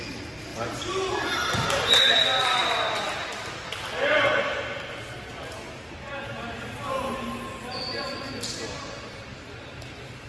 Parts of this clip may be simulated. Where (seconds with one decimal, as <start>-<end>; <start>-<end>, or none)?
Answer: none